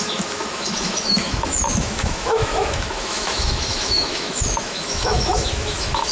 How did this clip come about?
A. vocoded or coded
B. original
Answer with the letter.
A